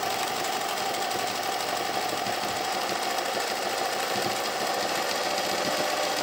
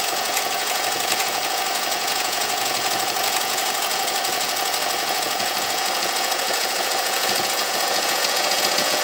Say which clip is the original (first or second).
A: first